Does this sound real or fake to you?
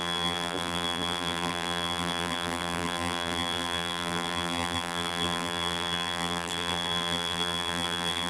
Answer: fake